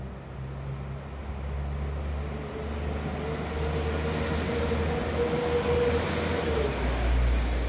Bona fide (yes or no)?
yes